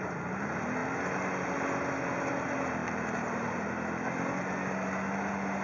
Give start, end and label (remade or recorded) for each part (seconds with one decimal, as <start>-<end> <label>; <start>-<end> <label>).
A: 0.0-2.8 recorded; 2.8-3.7 remade; 3.7-5.6 recorded